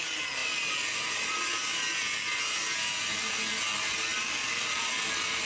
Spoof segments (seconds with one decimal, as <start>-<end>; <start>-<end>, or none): 0.4-2.4; 4.1-4.8